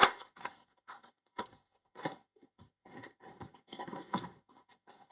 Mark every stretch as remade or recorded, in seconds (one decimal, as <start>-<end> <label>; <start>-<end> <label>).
0.0-5.1 remade